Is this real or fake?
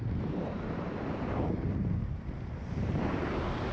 fake